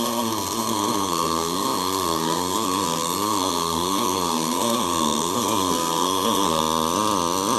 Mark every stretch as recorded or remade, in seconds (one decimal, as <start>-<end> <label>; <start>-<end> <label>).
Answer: 0.0-6.6 remade; 6.6-7.6 recorded